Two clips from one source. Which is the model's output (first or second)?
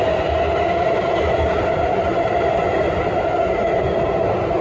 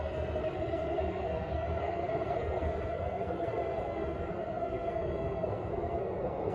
second